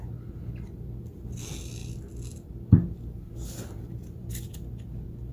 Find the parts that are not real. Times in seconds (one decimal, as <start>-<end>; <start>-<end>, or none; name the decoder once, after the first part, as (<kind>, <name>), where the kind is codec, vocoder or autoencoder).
none